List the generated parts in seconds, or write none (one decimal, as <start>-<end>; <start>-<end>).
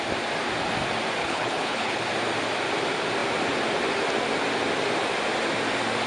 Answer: 1.2-2.0